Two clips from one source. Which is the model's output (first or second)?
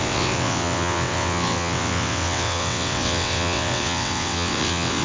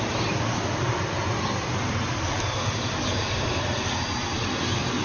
first